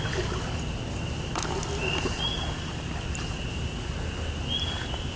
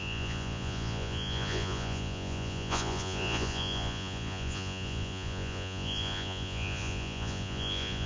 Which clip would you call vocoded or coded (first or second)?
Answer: second